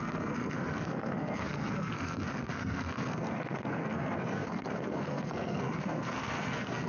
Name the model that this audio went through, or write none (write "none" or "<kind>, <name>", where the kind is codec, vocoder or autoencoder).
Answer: codec, SNAC